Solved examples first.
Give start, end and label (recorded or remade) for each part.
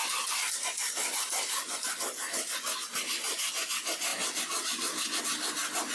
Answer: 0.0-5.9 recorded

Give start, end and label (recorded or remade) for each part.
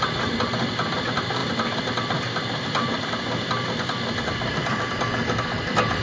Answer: 0.0-6.0 recorded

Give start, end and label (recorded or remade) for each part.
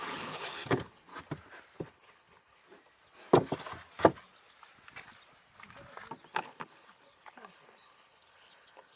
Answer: 0.0-1.1 remade; 1.1-1.8 recorded; 1.8-2.6 remade; 2.6-6.3 recorded; 6.3-9.0 remade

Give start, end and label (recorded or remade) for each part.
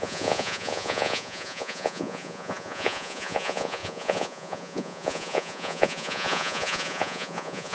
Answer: 0.0-7.7 remade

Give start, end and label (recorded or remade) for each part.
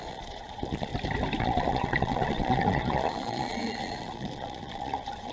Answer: 0.0-0.9 remade; 0.9-1.4 recorded; 1.4-5.3 remade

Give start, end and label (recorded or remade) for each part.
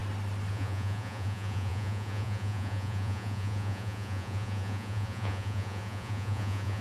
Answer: 0.0-0.5 recorded; 0.5-6.8 remade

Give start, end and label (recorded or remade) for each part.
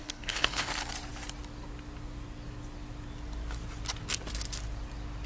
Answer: 0.0-0.7 remade; 0.7-5.3 recorded